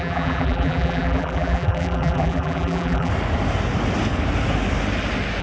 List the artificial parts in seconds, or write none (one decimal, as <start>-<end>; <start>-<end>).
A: 0.0-3.1